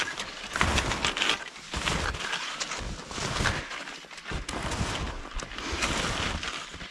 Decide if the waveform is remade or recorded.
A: recorded